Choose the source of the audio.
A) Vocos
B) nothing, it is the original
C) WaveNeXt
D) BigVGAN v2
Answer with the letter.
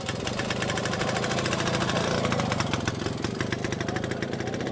B